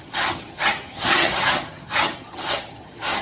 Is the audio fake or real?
fake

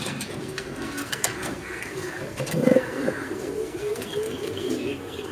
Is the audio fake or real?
fake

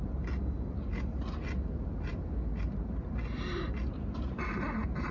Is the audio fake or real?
real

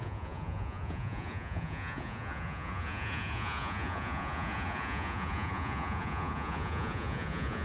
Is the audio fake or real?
fake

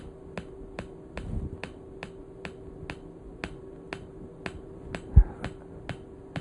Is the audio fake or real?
real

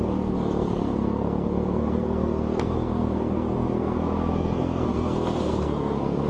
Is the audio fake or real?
fake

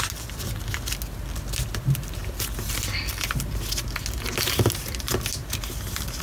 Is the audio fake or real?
real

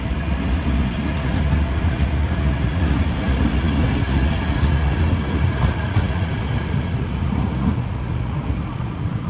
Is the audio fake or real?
fake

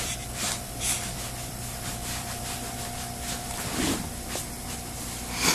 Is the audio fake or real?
fake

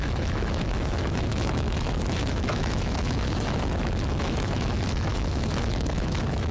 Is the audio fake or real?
fake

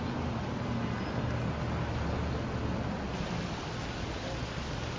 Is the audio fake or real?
real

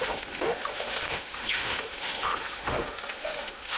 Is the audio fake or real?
fake